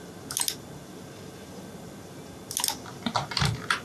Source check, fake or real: real